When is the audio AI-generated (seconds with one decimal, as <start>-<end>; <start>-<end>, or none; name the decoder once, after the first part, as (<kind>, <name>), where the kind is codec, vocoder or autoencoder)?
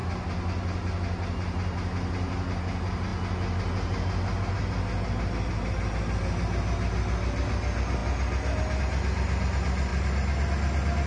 none